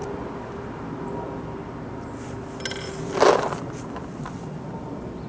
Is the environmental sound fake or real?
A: real